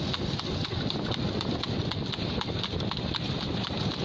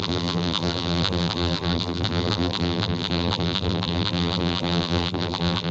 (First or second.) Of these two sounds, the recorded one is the first